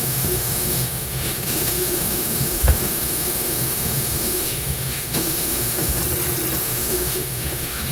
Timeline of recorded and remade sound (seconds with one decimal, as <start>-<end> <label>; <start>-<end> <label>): 0.0-6.0 remade; 6.0-6.6 recorded; 6.6-7.9 remade